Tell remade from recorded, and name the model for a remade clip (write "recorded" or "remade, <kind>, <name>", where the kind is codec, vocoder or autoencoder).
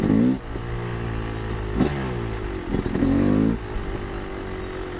recorded